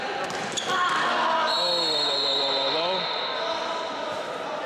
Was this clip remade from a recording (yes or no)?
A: no